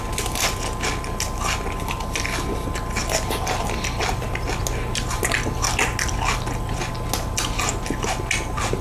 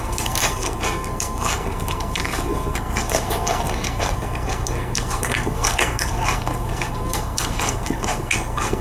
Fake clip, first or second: second